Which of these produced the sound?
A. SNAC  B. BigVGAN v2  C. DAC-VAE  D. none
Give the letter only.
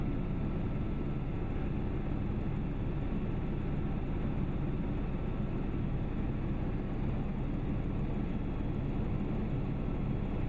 D